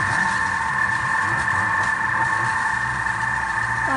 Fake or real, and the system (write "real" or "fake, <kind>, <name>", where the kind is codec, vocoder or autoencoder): real